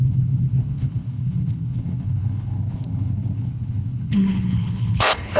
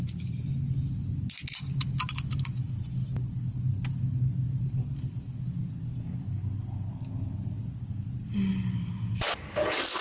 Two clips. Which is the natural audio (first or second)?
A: second